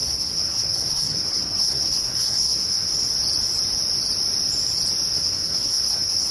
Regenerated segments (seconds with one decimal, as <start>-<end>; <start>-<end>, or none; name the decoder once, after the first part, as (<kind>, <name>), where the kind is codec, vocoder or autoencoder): 0.0-2.9 (codec, SNAC); 5.1-6.3